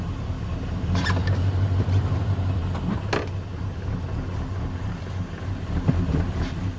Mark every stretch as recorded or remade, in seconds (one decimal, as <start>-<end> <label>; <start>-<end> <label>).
0.0-2.6 remade; 2.6-6.8 recorded